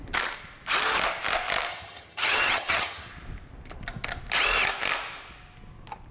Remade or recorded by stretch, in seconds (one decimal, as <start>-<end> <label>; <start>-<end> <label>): 0.0-1.7 recorded; 1.7-3.1 remade; 3.1-6.1 recorded